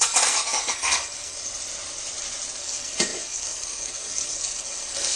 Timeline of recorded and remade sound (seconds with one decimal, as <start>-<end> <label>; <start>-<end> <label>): 0.0-1.5 remade; 1.5-2.6 recorded; 2.6-5.2 remade